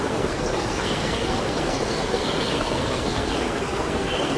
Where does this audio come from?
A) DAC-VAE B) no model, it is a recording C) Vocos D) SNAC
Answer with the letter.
D